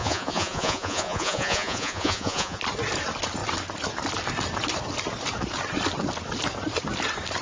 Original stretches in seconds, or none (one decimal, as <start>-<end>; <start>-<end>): 2.6-7.4

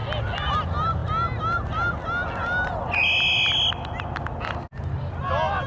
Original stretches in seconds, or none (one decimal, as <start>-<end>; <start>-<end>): 0.0-5.7

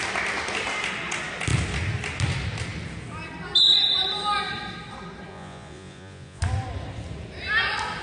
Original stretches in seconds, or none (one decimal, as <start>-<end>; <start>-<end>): 0.0-5.3; 6.4-8.0

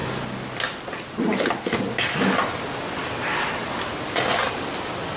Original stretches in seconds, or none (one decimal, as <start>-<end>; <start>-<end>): 0.0-5.2